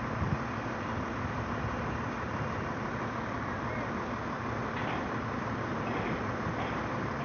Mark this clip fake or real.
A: real